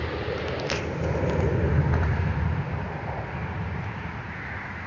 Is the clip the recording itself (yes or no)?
yes